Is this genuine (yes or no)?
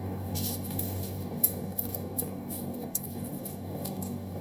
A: no